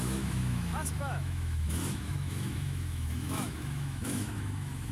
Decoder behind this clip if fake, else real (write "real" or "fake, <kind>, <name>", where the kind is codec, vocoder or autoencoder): fake, autoencoder, DAC-VAE